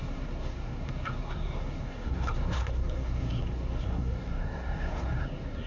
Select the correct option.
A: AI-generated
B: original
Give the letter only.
A